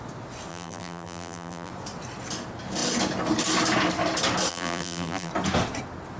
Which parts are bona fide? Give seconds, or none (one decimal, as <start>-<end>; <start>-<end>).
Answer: 0.0-0.5; 1.7-4.5; 5.3-6.2